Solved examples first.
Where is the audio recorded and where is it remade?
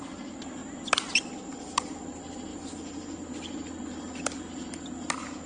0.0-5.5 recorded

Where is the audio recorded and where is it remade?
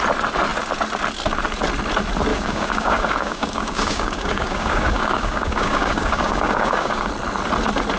0.0-2.3 recorded; 2.3-7.1 remade; 7.1-8.0 recorded